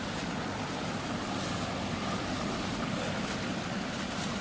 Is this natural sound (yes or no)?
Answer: yes